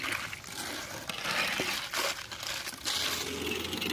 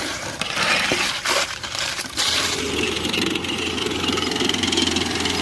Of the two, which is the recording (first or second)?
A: first